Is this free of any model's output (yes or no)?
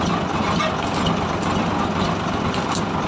yes